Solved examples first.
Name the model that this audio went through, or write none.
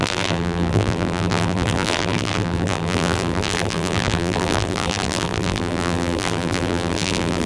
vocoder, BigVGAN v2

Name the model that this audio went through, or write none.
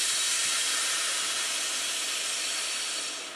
none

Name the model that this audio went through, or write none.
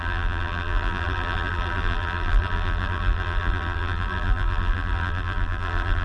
vocoder, BigVGAN v2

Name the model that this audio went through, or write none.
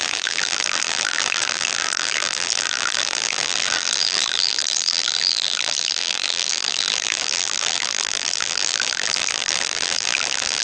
vocoder, BigVGAN v2